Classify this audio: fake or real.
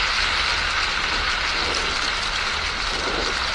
real